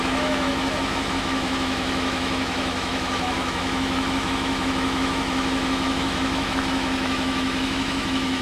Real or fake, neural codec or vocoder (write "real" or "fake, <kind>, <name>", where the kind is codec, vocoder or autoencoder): fake, autoencoder, DAC-VAE